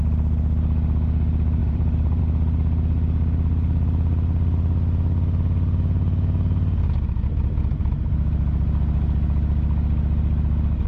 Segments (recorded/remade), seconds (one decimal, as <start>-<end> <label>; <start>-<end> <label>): 0.0-1.6 recorded; 1.6-2.2 remade; 2.2-10.9 recorded